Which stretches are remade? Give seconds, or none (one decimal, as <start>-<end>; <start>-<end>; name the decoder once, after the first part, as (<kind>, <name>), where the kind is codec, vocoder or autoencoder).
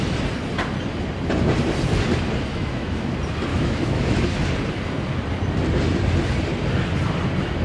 2.5-3.1 (autoencoder, DAC-VAE); 3.5-4.2